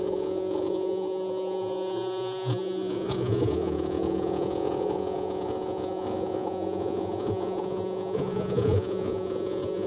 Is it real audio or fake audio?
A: fake